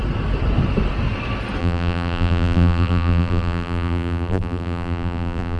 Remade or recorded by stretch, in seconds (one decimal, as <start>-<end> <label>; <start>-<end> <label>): 0.0-1.6 recorded; 1.6-5.6 remade